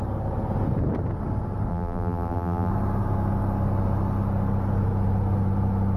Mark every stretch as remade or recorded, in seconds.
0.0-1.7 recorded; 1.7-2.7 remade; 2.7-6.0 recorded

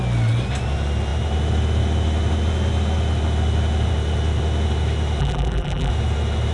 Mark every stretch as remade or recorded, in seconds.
0.0-5.2 recorded; 5.2-5.9 remade; 5.9-6.5 recorded

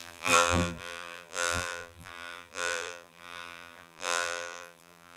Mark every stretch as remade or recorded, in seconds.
0.0-5.2 remade

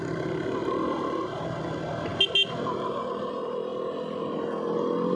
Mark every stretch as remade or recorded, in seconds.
0.0-2.1 recorded; 2.1-3.3 remade; 3.3-5.2 recorded

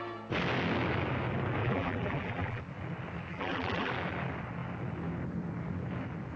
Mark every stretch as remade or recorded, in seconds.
0.0-1.6 recorded; 1.6-2.6 remade; 2.6-3.3 recorded; 3.3-3.9 remade; 3.9-6.4 recorded

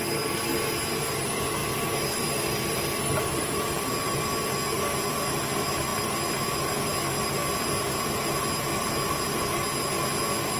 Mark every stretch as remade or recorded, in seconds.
0.0-1.6 recorded; 1.6-4.5 remade; 4.5-10.6 recorded

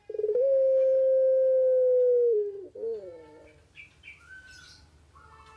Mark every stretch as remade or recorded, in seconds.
0.0-5.6 recorded

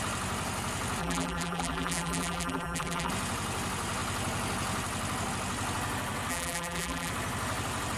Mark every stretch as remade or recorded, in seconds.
0.0-1.0 recorded; 1.0-3.1 remade; 3.1-6.3 recorded; 6.3-7.1 remade; 7.1-8.0 recorded